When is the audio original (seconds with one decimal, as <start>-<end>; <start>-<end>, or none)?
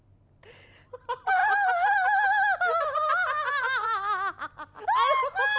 0.0-5.6